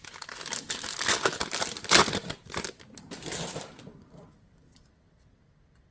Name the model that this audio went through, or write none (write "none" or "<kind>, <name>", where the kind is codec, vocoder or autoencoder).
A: none